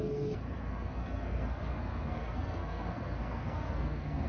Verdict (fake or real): fake